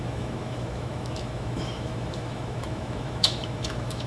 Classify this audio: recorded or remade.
remade